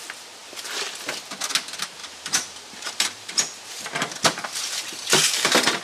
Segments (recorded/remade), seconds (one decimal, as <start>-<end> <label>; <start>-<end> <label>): 0.0-2.0 recorded; 2.0-5.8 remade

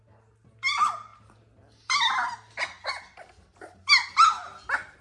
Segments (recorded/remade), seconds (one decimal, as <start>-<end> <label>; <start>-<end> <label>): 0.0-5.0 recorded

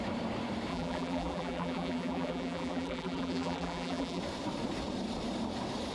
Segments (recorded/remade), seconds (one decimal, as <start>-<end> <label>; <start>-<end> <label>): 0.0-0.7 recorded; 0.7-4.2 remade; 4.2-5.9 recorded

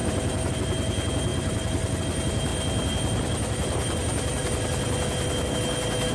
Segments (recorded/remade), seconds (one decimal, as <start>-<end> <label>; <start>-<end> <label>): 0.0-0.5 remade; 0.5-1.3 recorded; 1.3-2.0 remade; 2.0-6.1 recorded